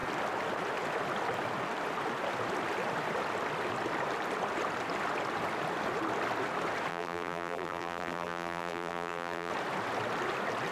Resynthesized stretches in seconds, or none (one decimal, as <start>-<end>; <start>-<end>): 6.9-9.5